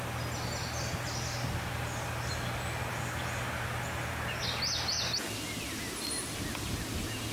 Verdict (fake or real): real